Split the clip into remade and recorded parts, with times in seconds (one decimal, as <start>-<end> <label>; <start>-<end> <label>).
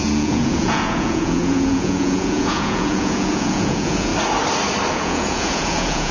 0.0-4.1 remade; 4.1-4.9 recorded; 4.9-6.1 remade